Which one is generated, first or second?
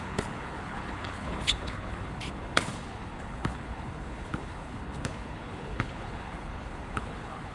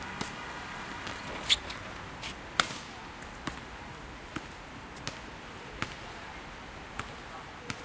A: first